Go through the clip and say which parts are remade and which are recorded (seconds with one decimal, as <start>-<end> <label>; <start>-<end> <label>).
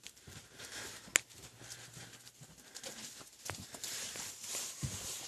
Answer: 0.0-1.1 remade; 1.1-3.9 recorded; 3.9-5.3 remade